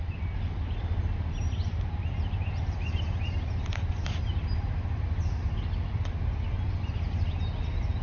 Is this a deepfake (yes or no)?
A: no